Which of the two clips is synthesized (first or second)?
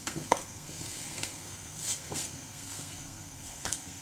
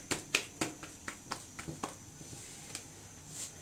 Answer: first